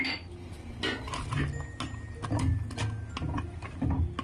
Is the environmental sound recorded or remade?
recorded